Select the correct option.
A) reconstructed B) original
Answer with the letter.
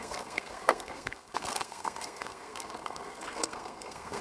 A